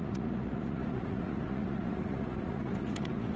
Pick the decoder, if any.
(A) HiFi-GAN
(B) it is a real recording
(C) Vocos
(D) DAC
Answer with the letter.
C